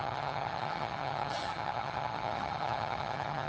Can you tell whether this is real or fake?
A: fake